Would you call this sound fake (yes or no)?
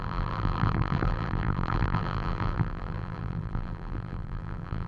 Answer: yes